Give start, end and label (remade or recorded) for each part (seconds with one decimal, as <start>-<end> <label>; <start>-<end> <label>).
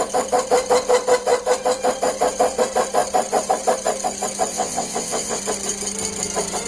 0.0-4.5 recorded; 4.5-5.4 remade; 5.4-6.7 recorded